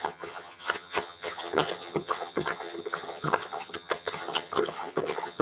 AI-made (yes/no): yes